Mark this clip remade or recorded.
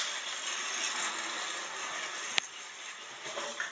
recorded